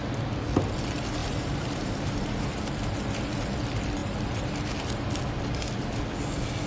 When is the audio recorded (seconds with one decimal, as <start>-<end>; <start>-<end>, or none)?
0.0-1.2; 2.6-4.0; 4.7-6.7